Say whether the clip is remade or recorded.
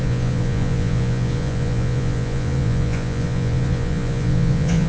remade